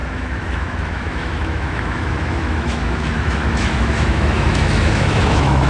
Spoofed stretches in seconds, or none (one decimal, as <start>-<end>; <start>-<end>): 0.0-5.7